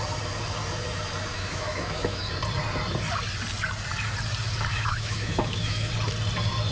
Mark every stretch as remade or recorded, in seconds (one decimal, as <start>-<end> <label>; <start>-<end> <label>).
0.0-1.3 recorded; 1.3-2.2 remade; 2.2-4.7 recorded; 4.7-5.9 remade; 5.9-6.7 recorded